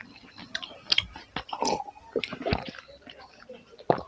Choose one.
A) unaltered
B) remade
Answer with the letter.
A